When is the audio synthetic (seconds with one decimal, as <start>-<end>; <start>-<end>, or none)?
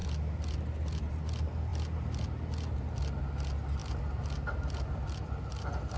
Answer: none